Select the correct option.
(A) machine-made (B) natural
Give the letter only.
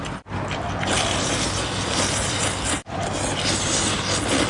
A